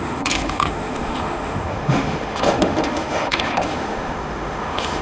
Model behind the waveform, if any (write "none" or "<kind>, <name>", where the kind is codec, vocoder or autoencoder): autoencoder, DAC-VAE